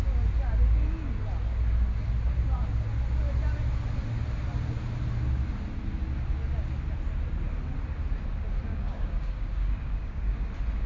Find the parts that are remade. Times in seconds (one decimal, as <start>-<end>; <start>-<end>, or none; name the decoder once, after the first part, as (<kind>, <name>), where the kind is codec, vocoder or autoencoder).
8.7-10.5 (codec, DAC)